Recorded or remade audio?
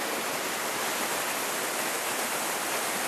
recorded